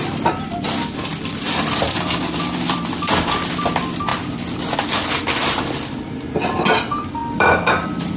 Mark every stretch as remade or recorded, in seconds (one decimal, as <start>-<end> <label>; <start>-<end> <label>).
0.0-4.1 remade; 4.1-4.8 recorded; 4.8-5.4 remade; 5.4-6.8 recorded; 6.8-8.2 remade